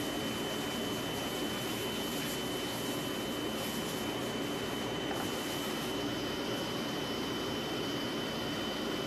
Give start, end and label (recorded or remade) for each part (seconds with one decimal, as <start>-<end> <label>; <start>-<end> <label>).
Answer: 0.0-4.2 recorded; 4.2-9.1 remade